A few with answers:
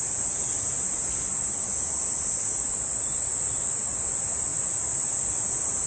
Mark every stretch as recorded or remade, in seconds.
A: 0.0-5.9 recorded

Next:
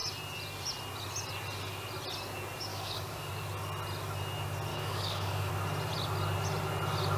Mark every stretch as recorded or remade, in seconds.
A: 0.0-2.7 recorded; 2.7-3.3 remade; 3.3-4.7 recorded; 4.7-5.5 remade; 5.5-7.2 recorded

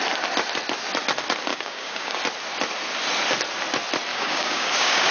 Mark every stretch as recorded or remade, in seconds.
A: 0.0-1.5 recorded; 1.5-2.2 remade; 2.2-4.1 recorded; 4.1-5.1 remade

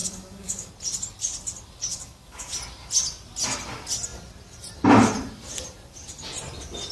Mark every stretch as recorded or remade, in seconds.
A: 0.0-0.7 remade; 0.7-1.9 recorded; 1.9-2.5 remade; 2.5-6.9 recorded

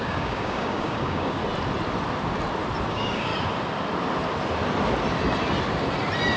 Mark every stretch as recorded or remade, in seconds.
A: 0.0-1.4 remade; 1.4-2.9 recorded; 2.9-3.3 remade; 3.3-6.4 recorded